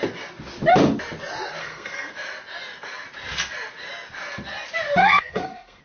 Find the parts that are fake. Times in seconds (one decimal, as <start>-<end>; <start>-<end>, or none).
1.6-2.1; 5.0-5.8